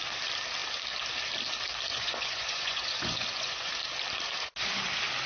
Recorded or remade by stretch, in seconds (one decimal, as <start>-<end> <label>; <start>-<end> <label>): 0.0-1.9 recorded; 1.9-3.7 remade; 3.7-5.3 recorded